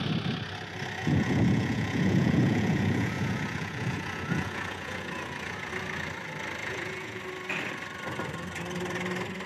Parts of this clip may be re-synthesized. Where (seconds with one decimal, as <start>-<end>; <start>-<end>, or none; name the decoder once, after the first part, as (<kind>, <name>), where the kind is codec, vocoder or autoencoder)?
1.0-5.7 (vocoder, Vocos); 6.6-7.2